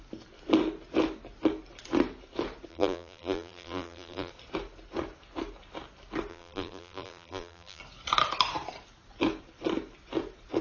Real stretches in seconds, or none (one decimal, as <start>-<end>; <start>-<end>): 0.0-2.7; 4.3-6.3; 7.8-10.6

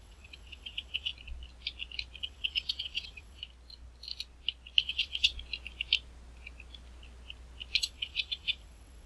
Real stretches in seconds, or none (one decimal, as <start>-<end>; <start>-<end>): 1.1-2.2; 3.4-4.8; 5.3-7.8

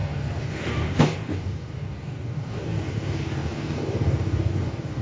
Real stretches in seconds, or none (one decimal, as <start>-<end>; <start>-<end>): none